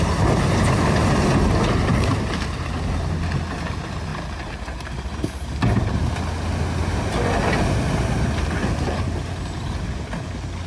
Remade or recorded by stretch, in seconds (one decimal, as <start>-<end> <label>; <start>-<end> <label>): 0.0-1.9 recorded; 1.9-2.7 remade; 2.7-4.1 recorded; 4.1-6.2 remade; 6.2-10.7 recorded